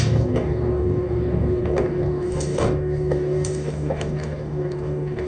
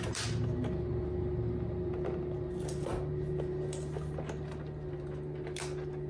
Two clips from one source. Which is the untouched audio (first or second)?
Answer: second